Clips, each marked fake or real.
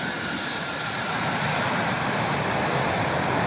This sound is real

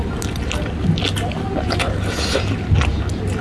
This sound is real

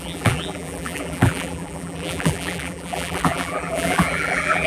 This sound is fake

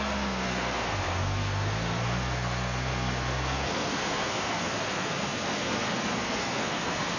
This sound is fake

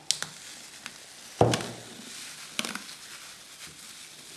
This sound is real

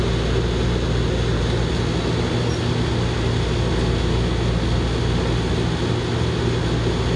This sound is real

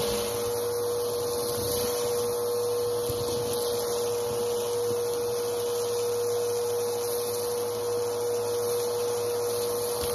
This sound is real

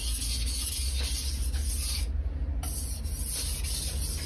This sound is real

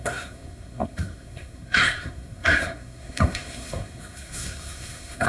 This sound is fake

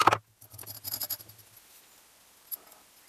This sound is real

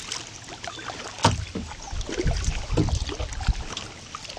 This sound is real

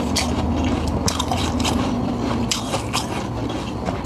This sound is real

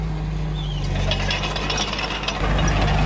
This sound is real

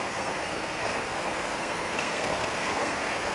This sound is fake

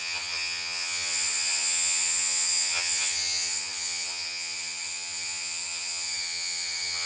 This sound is fake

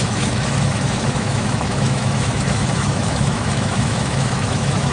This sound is fake